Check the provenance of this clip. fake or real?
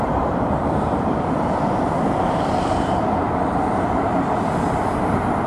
fake